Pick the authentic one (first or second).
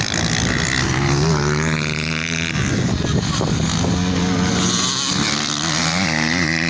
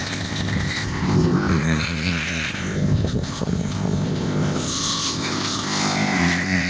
first